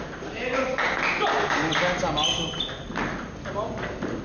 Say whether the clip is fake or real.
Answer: real